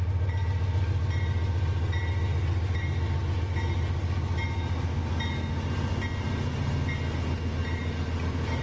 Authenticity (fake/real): real